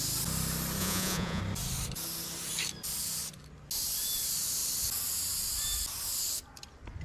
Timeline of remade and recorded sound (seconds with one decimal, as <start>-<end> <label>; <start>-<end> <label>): 0.0-0.8 recorded; 0.8-1.4 remade; 1.4-7.0 recorded